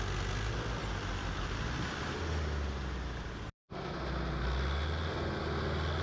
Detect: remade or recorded recorded